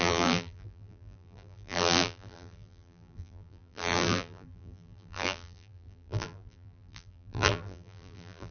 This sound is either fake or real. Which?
fake